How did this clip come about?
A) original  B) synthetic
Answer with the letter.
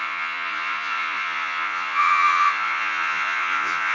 B